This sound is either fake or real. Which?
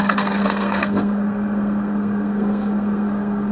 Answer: fake